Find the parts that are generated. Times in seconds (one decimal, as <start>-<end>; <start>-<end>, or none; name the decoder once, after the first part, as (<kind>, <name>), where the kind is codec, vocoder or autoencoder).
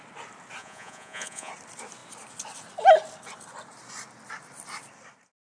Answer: 0.6-1.5 (vocoder, Vocos)